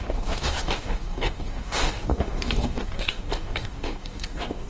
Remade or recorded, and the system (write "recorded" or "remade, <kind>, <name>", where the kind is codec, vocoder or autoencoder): remade, codec, DAC